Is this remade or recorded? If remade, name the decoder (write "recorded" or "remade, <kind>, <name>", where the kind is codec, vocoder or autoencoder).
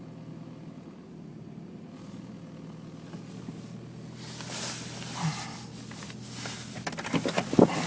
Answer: recorded